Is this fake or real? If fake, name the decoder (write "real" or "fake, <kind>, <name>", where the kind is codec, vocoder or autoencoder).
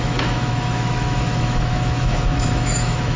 fake, autoencoder, DAC-VAE